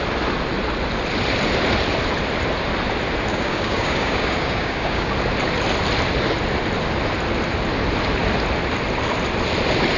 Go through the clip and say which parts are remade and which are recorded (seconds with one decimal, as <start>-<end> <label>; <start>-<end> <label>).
0.0-3.3 recorded; 3.3-5.1 remade; 5.1-10.0 recorded